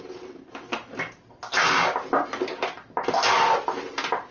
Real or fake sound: real